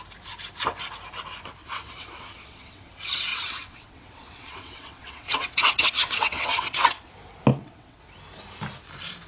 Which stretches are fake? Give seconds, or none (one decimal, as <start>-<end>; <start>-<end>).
1.6-2.9; 3.3-7.1; 7.5-8.0